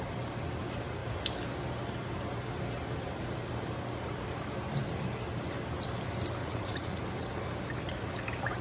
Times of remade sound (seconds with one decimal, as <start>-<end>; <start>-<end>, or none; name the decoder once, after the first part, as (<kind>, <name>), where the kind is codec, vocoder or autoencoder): 6.4-7.0 (vocoder, Vocos)